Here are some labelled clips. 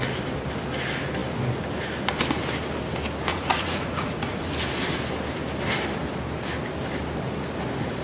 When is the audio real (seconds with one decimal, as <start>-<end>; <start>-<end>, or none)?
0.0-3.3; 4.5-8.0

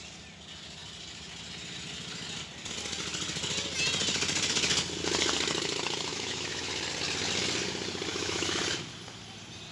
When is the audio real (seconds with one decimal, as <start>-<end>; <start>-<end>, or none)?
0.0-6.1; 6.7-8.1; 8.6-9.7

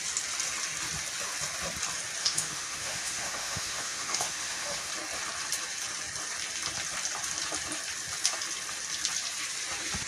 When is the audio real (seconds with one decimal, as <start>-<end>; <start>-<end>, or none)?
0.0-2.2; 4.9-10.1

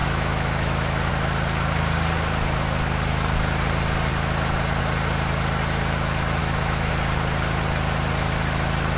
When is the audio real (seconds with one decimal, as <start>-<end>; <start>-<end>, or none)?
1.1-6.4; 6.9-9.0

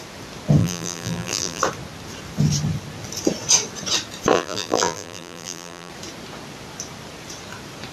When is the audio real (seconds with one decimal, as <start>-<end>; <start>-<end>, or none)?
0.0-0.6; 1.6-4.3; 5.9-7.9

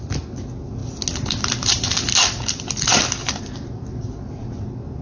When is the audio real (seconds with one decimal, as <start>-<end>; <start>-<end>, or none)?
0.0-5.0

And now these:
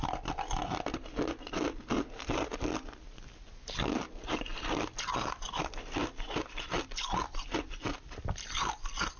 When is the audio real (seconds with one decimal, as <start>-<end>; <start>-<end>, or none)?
0.0-9.2

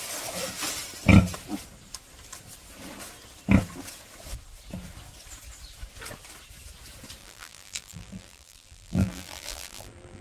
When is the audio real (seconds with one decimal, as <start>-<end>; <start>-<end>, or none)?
0.0-7.2